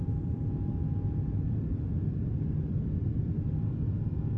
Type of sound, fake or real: real